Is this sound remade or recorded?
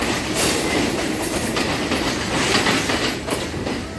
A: recorded